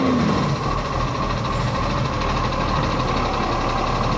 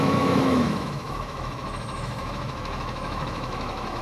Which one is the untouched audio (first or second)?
first